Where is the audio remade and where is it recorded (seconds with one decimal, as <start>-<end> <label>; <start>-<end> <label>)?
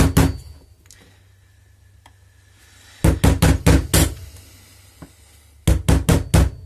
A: 0.0-6.7 recorded